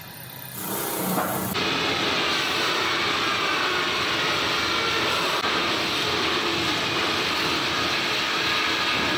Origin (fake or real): real